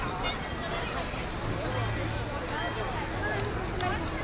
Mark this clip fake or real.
real